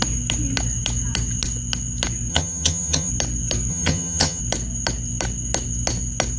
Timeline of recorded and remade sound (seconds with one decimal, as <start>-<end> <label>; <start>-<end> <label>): 0.0-2.3 recorded; 2.3-3.1 remade; 3.1-3.7 recorded; 3.7-4.4 remade; 4.4-6.4 recorded